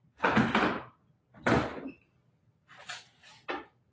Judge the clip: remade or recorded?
recorded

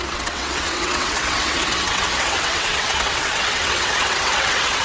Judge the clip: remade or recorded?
remade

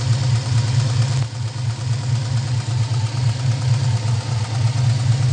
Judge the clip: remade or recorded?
recorded